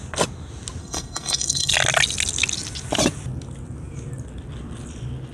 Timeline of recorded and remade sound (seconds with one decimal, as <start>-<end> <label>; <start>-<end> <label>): 0.0-0.8 recorded; 0.8-1.7 remade; 1.7-5.3 recorded